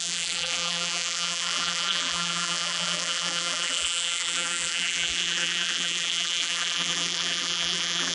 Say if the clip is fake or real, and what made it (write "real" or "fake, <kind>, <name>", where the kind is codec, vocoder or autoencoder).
fake, vocoder, BigVGAN v2